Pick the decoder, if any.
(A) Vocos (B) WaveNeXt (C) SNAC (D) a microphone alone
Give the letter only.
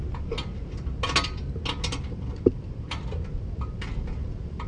D